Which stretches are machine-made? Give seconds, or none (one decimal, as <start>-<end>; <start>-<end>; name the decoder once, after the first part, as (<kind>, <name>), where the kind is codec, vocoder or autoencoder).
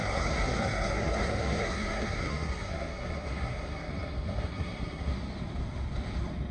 0.0-5.1 (codec, SNAC)